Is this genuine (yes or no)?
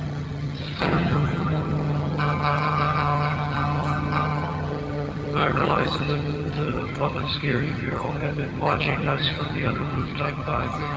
no